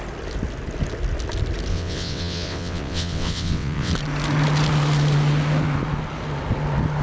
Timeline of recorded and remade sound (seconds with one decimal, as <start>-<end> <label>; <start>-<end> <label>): 0.0-1.7 recorded; 1.7-3.9 remade; 3.9-7.0 recorded

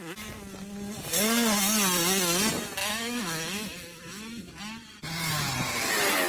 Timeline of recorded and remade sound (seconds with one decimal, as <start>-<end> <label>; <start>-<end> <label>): 0.0-2.8 recorded; 2.8-4.6 remade; 4.6-6.3 recorded

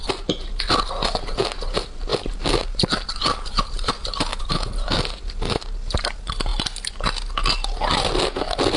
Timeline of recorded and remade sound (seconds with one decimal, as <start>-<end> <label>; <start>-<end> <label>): 0.0-2.1 recorded; 2.1-4.5 remade; 4.5-8.8 recorded